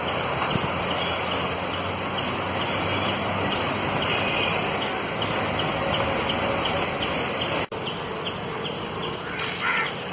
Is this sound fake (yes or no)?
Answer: no